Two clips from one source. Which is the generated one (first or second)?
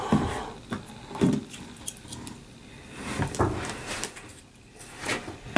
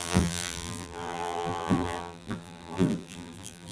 second